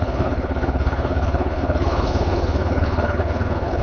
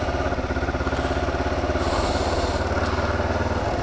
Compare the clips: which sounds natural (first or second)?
second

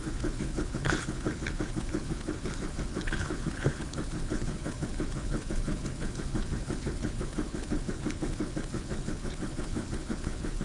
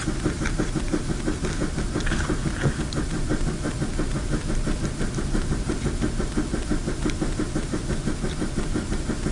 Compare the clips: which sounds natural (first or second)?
second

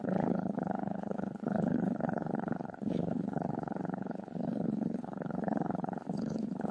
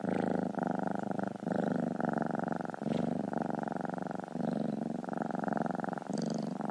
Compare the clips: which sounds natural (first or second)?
second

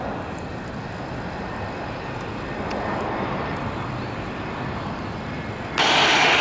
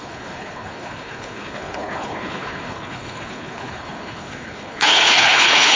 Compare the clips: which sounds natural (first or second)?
first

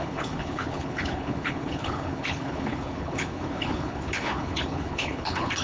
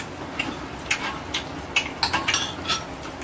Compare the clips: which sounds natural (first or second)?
second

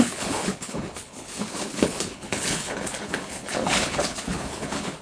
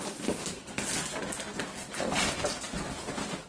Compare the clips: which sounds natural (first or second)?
second